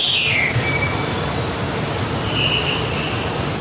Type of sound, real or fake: real